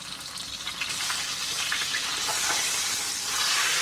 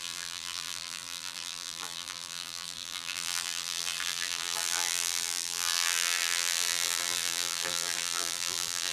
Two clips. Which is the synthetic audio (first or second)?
second